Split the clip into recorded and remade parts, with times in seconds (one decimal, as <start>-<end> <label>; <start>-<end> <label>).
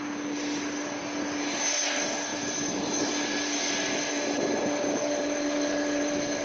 0.0-6.4 recorded